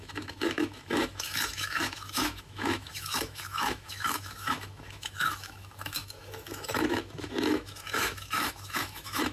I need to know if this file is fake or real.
fake